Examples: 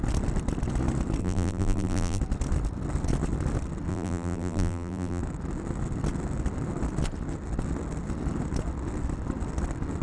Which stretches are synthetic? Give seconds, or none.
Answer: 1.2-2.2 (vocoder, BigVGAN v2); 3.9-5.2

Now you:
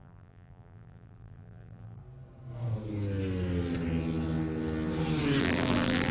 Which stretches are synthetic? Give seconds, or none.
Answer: 0.0-2.0 (vocoder, BigVGAN v2); 5.4-6.1

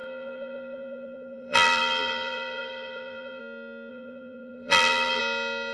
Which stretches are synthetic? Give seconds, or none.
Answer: 0.0-3.4 (vocoder, BigVGAN v2); 3.9-5.2

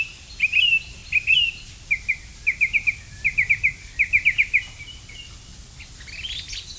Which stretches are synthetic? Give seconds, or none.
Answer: 0.0-1.0 (vocoder, BigVGAN v2); 5.1-5.5